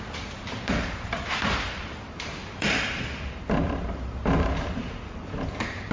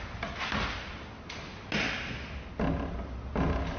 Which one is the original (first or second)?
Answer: second